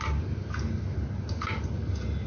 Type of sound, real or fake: real